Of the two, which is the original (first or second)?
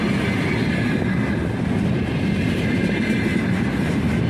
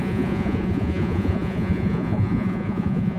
first